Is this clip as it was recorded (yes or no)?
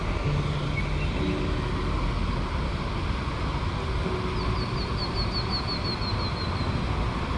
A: yes